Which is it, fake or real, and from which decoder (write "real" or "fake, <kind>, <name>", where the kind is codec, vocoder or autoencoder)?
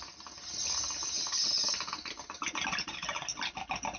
real